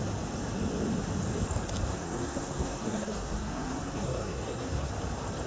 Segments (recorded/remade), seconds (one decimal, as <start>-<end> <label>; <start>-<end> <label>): 0.0-1.9 recorded; 1.9-4.9 remade; 4.9-5.5 recorded